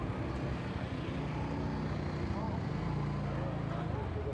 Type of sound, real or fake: real